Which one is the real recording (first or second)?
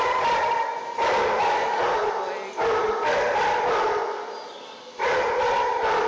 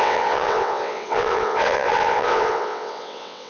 first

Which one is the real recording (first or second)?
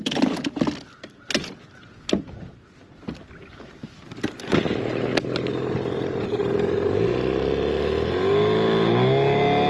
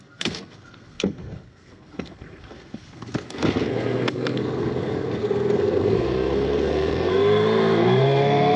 first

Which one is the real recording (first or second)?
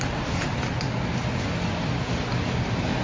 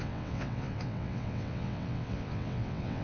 first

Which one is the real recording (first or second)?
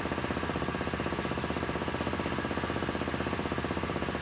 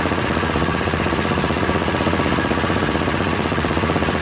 first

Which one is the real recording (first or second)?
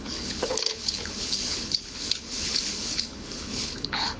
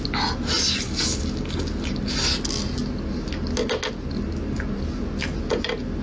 second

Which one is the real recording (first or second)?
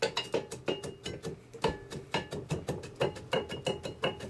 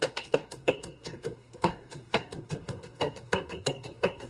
first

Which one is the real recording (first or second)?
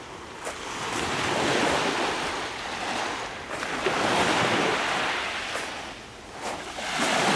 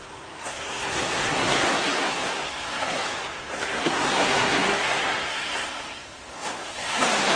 first